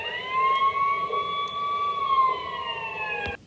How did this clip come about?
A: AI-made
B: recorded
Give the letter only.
B